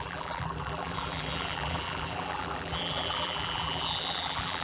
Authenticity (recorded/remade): remade